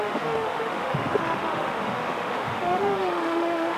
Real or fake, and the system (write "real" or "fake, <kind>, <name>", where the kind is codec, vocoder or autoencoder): fake, autoencoder, DAC-VAE